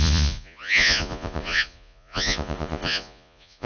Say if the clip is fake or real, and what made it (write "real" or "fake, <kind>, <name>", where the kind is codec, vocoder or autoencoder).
fake, vocoder, Vocos